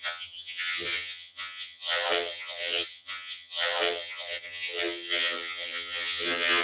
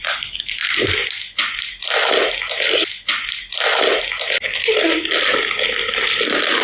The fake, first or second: first